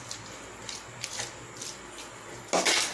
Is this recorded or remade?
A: recorded